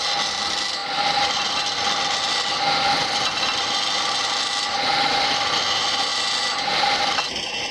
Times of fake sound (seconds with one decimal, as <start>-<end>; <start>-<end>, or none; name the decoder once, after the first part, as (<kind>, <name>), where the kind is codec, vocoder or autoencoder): none